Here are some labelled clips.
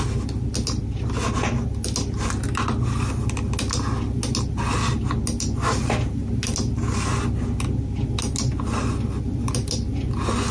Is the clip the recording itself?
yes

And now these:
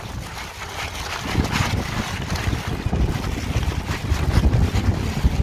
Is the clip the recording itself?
yes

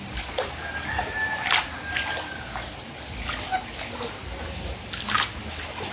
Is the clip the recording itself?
yes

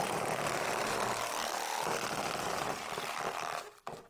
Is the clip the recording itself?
yes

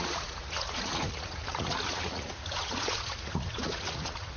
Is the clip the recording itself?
no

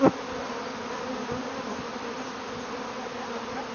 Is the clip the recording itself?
yes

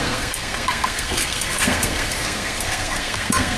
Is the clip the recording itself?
no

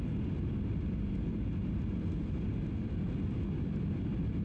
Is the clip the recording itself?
yes